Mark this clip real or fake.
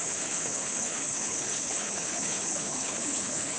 fake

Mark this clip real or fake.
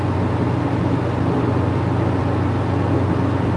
real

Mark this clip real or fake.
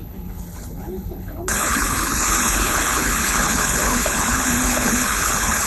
fake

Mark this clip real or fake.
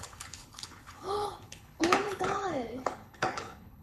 fake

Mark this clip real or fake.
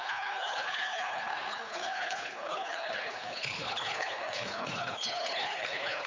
fake